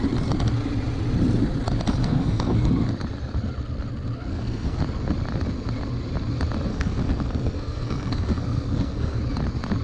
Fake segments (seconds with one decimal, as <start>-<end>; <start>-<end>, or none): 2.0-2.7; 4.3-4.8; 6.7-9.2